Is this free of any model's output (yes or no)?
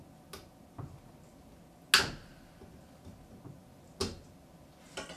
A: yes